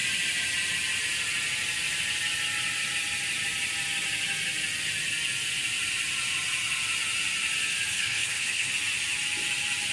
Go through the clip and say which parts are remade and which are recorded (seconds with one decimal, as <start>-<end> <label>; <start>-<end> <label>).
0.0-7.9 recorded; 7.9-8.7 remade; 8.7-9.9 recorded